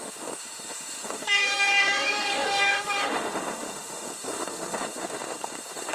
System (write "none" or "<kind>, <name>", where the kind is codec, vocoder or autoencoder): autoencoder, DAC-VAE